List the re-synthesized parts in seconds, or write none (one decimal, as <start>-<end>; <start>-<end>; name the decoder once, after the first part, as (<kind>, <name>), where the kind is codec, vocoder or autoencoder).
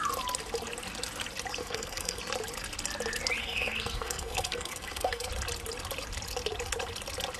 1.6-2.2 (codec, SNAC); 3.4-5.3